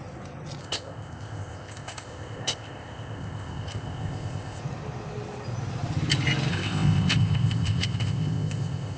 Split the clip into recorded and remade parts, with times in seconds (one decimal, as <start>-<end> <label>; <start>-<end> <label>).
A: 0.0-0.6 recorded; 0.6-4.6 remade; 4.6-6.5 recorded; 6.5-9.0 remade